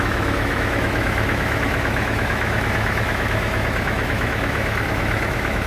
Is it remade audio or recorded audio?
remade